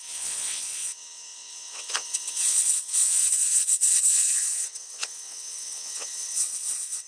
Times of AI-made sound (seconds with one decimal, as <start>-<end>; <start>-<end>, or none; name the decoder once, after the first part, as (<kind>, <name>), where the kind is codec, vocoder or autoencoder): 0.0-7.1 (vocoder, WaveNeXt)